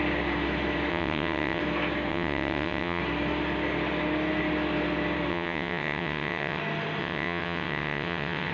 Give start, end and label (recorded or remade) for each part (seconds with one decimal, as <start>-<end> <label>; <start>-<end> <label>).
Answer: 0.0-0.9 recorded; 0.9-1.6 remade; 1.6-2.1 recorded; 2.1-3.0 remade; 3.0-5.3 recorded; 5.3-6.6 remade; 6.6-7.0 recorded; 7.0-8.5 remade